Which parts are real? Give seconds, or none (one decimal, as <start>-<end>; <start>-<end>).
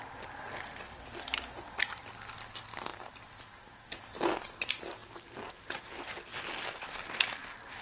0.0-2.9; 4.0-7.8